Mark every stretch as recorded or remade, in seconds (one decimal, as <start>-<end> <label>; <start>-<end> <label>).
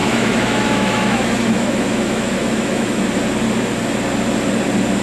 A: 0.0-3.0 remade; 3.0-5.0 recorded